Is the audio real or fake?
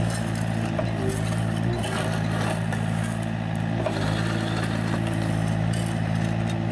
real